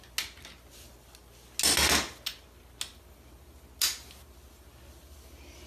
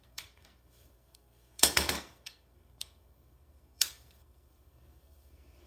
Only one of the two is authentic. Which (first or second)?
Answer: first